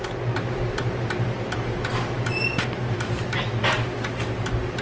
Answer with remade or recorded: recorded